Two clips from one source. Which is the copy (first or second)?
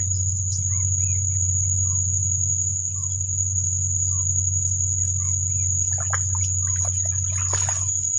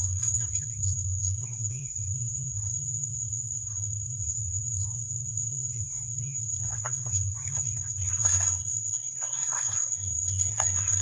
second